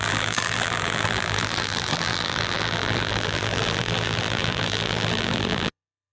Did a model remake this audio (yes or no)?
yes